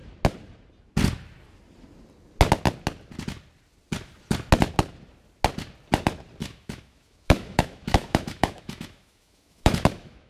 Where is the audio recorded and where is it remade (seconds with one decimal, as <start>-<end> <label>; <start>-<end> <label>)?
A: 0.0-6.4 recorded; 6.4-10.3 remade